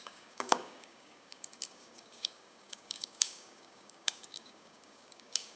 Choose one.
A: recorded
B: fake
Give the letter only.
B